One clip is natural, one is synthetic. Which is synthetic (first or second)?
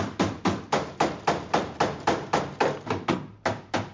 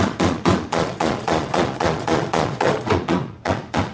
second